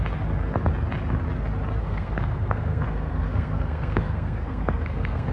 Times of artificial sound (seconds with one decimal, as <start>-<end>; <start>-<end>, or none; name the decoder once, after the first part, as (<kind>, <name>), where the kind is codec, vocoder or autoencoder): 1.8-5.3 (codec, SNAC)